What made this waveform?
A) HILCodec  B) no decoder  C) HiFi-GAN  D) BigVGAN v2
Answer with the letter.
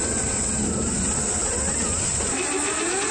B